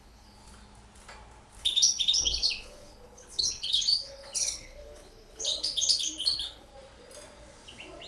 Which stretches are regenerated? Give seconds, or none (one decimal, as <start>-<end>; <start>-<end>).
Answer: 0.0-0.4; 1.6-6.7